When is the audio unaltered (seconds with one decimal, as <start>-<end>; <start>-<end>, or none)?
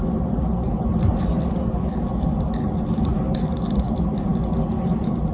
0.0-5.3